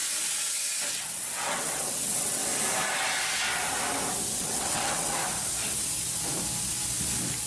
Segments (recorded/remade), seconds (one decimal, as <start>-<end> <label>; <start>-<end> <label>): 0.0-0.9 recorded; 0.9-2.4 remade; 2.4-4.4 recorded; 4.4-5.2 remade; 5.2-7.5 recorded